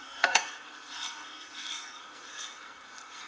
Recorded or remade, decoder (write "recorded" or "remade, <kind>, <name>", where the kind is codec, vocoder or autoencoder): remade, codec, SNAC